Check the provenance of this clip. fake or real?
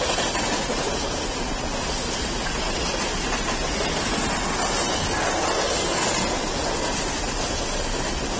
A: real